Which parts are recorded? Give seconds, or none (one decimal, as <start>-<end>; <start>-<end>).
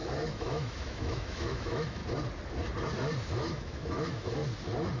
2.0-3.3; 4.4-5.0